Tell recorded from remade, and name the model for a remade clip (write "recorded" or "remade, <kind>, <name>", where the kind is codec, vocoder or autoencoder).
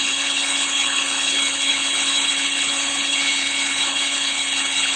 remade, codec, HILCodec